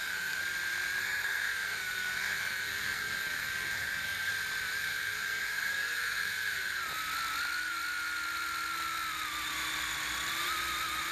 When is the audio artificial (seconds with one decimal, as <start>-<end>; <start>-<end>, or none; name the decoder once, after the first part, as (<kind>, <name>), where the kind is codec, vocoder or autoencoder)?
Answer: 0.0-0.4 (codec, SNAC); 1.0-4.3; 4.8-6.8